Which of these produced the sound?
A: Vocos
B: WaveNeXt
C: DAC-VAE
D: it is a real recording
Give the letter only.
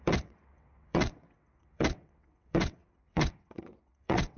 B